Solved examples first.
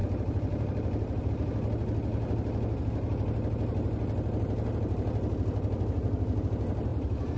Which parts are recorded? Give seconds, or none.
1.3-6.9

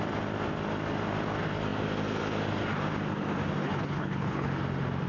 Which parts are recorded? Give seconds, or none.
0.0-3.6; 4.5-5.1

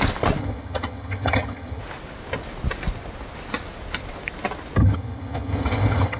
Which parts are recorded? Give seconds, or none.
0.0-0.4; 1.8-4.8

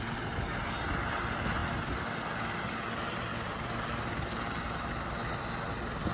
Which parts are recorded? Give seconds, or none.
0.0-6.1

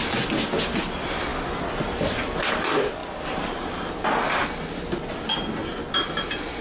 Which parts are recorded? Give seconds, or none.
0.0-6.6